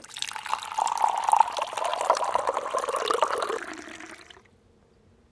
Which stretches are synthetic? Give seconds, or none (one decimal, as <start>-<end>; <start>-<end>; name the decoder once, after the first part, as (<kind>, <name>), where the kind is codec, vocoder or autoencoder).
none